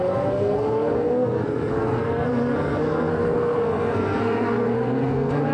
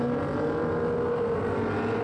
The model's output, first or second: first